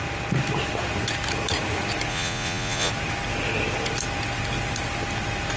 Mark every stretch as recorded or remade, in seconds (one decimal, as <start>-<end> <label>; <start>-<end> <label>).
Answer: 0.0-2.1 recorded; 2.1-2.9 remade; 2.9-5.6 recorded